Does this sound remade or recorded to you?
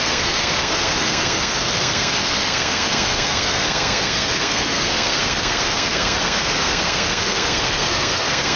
remade